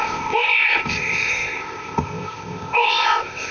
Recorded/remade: remade